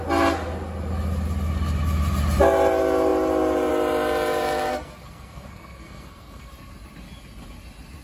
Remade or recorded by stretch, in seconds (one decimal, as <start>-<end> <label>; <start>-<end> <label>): 0.0-4.7 recorded; 4.7-6.5 remade; 6.5-8.0 recorded